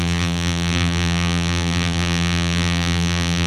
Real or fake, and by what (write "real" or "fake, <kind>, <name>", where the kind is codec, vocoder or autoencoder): fake, vocoder, BigVGAN v2